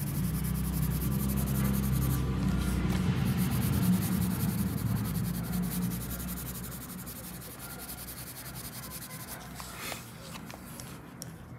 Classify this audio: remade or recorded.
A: recorded